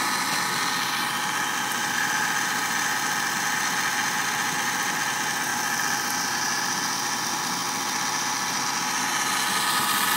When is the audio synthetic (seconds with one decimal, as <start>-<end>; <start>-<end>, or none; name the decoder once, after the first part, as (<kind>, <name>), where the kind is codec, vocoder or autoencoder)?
none